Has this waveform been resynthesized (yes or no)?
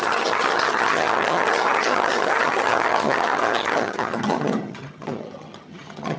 yes